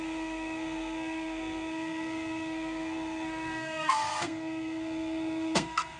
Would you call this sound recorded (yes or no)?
no